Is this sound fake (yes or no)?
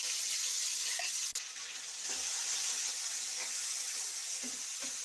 no